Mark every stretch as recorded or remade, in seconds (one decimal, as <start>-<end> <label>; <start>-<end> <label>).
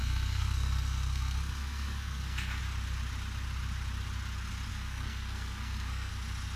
0.0-2.6 remade; 2.6-4.7 recorded; 4.7-6.1 remade; 6.1-6.6 recorded